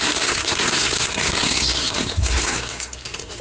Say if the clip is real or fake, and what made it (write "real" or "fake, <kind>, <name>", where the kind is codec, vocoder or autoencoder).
fake, codec, SNAC